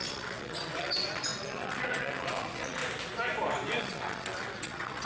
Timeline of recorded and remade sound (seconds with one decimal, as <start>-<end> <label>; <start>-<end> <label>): 0.0-2.8 remade; 2.8-3.8 recorded; 3.8-5.1 remade